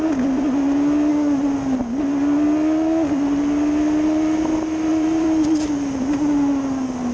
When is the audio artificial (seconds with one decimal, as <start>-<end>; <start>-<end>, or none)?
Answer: 4.9-5.7